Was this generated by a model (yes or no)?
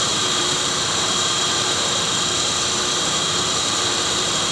yes